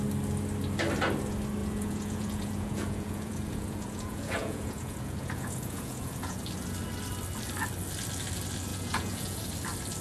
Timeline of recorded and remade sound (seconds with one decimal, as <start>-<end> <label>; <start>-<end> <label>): 0.0-1.6 recorded; 1.6-6.4 remade; 6.4-8.7 recorded; 8.7-9.4 remade; 9.4-10.0 recorded